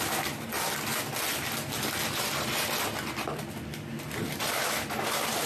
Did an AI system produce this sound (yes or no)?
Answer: no